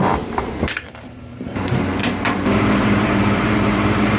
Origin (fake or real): fake